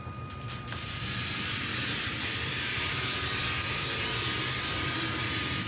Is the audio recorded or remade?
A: remade